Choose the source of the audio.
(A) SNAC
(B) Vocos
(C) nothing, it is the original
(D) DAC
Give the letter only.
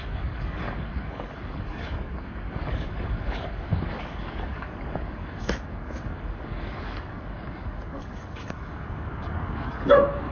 D